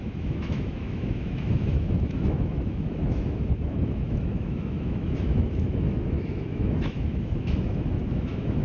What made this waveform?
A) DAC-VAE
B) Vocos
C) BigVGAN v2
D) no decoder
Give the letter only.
A